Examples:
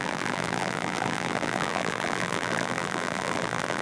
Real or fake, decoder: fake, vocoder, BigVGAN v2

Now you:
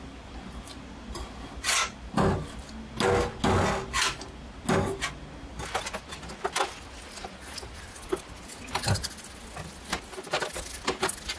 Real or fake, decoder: real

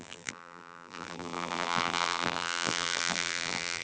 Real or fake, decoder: fake, vocoder, BigVGAN v2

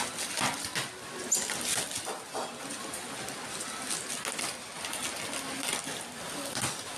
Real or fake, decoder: real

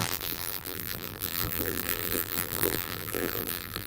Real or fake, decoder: fake, vocoder, BigVGAN v2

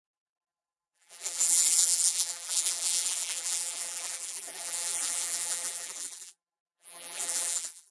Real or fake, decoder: fake, vocoder, BigVGAN v2